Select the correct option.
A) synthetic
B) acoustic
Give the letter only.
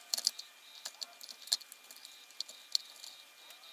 B